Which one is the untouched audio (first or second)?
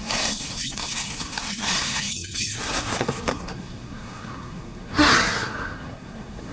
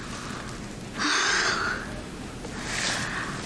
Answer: second